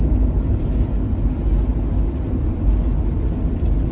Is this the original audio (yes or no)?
yes